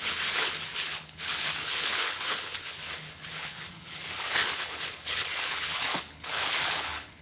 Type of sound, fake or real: fake